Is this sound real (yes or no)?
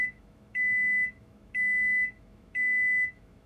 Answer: no